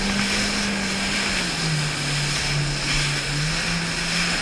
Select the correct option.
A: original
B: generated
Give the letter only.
A